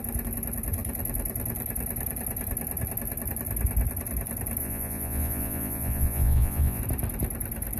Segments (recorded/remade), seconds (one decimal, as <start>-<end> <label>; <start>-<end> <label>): 0.0-4.6 recorded; 4.6-6.8 remade; 6.8-7.8 recorded